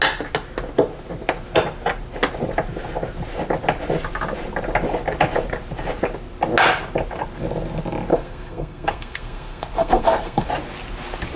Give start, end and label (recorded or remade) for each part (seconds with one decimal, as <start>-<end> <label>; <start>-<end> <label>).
0.0-8.1 recorded; 8.1-10.5 remade; 10.5-11.4 recorded